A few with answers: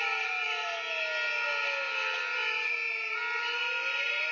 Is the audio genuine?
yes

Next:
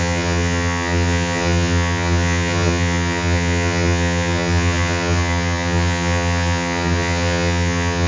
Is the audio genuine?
no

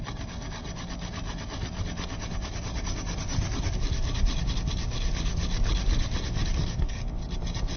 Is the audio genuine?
yes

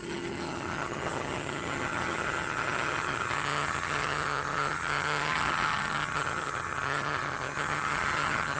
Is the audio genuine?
no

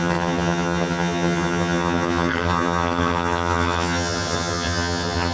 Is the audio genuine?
no